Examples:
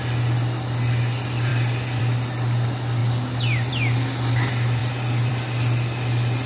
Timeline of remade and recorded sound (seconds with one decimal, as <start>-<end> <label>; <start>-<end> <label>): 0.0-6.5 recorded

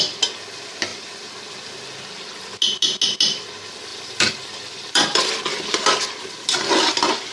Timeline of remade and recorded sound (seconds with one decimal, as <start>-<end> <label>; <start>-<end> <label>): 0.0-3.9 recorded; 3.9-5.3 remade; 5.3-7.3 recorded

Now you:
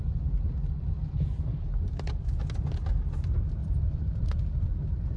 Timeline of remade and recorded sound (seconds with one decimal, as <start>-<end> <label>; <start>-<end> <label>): 0.0-1.0 recorded; 1.0-2.1 remade; 2.1-3.6 recorded; 3.6-4.4 remade; 4.4-5.2 recorded

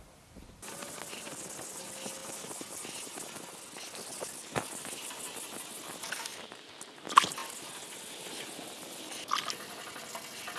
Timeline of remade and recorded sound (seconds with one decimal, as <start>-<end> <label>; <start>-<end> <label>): 0.0-6.3 recorded; 6.3-6.9 remade; 6.9-10.6 recorded

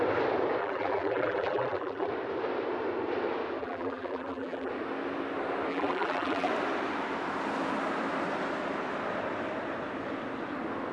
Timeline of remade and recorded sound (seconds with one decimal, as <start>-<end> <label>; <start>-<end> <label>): 0.0-0.6 recorded; 0.6-2.1 remade; 2.1-3.6 recorded; 3.6-4.7 remade; 4.7-5.7 recorded; 5.7-6.5 remade; 6.5-10.9 recorded

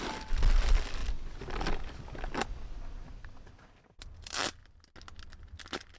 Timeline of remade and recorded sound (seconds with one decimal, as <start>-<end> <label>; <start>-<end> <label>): 0.0-1.0 remade; 1.0-4.0 recorded; 4.0-4.6 remade; 4.6-6.0 recorded